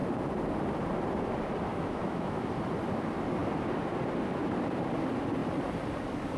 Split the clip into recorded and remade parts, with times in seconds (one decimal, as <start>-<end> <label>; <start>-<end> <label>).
0.0-1.7 recorded; 1.7-2.5 remade; 2.5-6.4 recorded